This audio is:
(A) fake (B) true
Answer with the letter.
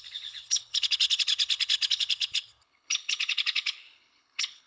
A